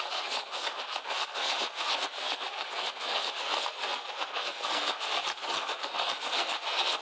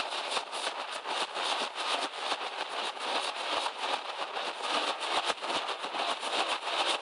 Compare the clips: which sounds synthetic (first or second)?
first